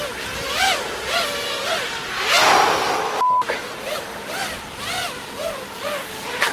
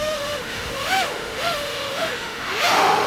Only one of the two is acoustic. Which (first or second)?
first